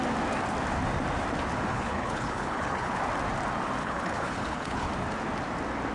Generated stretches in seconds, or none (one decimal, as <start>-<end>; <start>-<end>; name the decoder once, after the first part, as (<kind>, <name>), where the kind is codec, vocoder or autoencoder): 1.7-3.0 (codec, HILCodec); 3.8-4.9